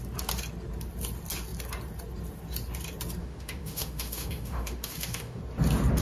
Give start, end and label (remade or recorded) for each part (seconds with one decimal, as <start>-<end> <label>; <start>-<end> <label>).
0.0-3.2 recorded; 3.2-5.4 remade; 5.4-6.0 recorded